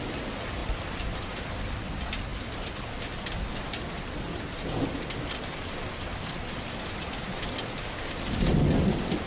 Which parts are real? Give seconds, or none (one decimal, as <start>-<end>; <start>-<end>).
0.0-9.3